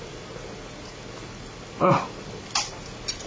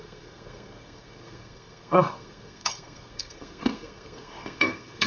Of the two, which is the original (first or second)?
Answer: first